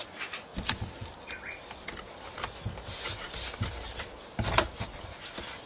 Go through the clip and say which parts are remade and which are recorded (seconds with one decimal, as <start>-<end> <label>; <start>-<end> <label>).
0.0-5.7 recorded